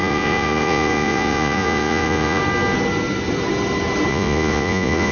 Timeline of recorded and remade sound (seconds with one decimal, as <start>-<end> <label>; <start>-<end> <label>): 0.0-2.4 remade; 2.4-4.1 recorded; 4.1-5.1 remade